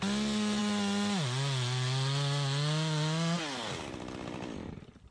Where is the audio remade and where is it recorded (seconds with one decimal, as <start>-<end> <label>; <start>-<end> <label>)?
0.0-5.1 recorded